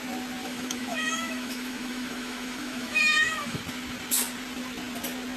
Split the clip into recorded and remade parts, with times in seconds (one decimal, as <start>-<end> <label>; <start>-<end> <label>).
0.0-0.4 recorded; 0.4-3.6 remade; 3.6-5.4 recorded